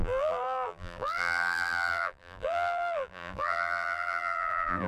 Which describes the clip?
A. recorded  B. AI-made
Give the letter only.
B